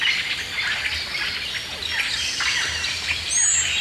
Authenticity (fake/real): real